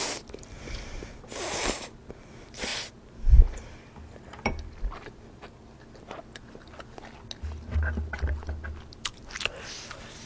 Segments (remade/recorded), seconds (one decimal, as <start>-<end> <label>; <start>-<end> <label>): 0.0-10.3 recorded